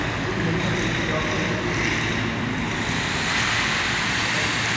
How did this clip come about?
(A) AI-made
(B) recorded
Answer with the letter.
B